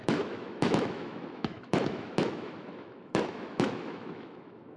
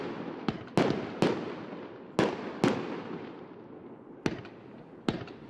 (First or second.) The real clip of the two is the second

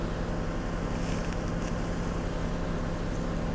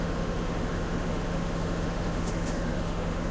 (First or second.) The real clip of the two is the first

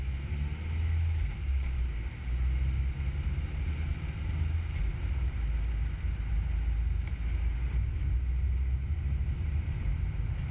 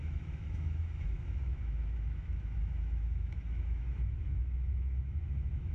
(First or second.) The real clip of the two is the first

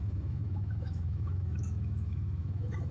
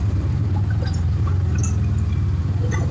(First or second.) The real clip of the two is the second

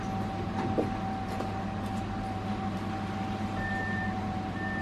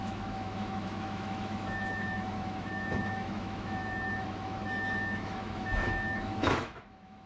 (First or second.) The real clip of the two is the first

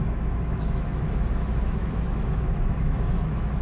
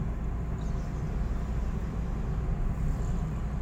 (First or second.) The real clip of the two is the second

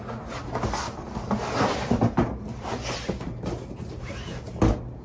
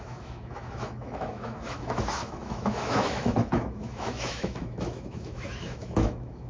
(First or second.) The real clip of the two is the first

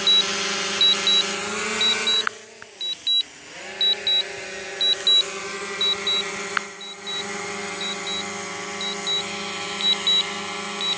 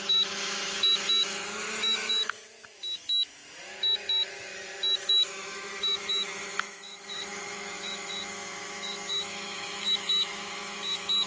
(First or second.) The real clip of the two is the first